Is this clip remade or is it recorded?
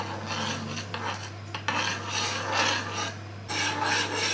recorded